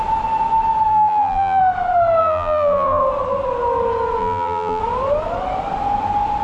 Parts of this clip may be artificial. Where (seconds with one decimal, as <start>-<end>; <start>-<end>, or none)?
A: 0.9-1.6; 2.2-3.0; 4.2-4.8